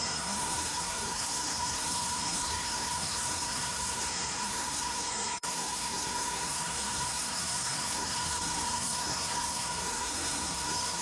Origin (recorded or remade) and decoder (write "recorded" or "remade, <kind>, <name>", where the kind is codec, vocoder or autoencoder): remade, codec, SNAC